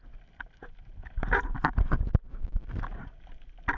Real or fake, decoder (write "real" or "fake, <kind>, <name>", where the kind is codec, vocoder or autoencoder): real